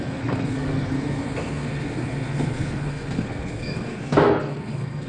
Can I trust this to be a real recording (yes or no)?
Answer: no